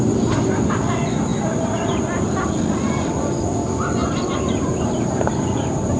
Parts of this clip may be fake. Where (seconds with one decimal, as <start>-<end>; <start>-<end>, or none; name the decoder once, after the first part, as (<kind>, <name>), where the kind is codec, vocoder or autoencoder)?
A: 4.0-6.0 (vocoder, BigVGAN v2)